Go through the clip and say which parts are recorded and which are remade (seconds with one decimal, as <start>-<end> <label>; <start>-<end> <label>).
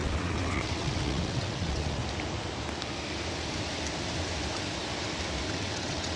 0.0-2.0 remade; 2.0-5.5 recorded; 5.5-6.2 remade